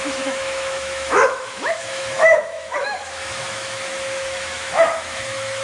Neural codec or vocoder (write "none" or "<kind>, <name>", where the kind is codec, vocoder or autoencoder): autoencoder, DAC-VAE